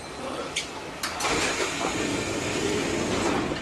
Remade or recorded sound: recorded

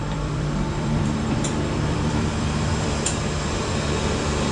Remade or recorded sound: remade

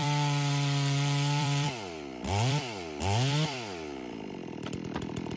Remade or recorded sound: remade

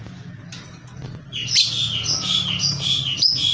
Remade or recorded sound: recorded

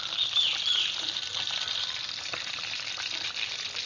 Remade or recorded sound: remade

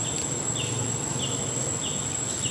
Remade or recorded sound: recorded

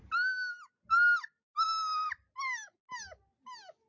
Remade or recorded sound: recorded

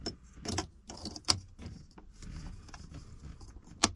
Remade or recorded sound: recorded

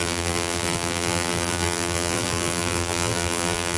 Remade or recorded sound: remade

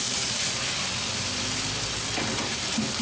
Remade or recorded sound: remade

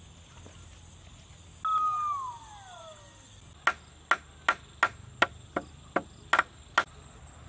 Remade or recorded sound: recorded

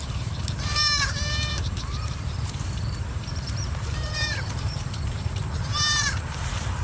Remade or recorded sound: remade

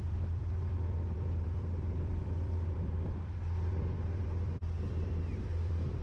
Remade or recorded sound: remade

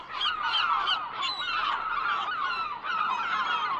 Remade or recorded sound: recorded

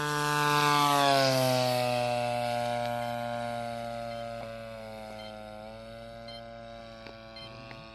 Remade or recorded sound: recorded